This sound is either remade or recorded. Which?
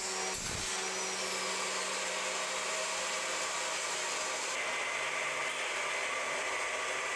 recorded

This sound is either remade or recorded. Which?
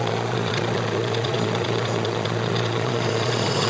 remade